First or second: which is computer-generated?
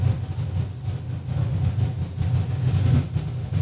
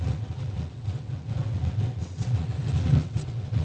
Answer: second